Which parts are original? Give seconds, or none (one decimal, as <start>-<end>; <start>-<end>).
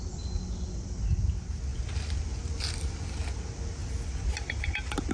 0.0-5.1